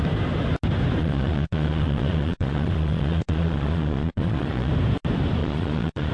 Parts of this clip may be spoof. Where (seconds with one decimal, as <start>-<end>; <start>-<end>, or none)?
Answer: 1.0-4.7; 5.4-6.1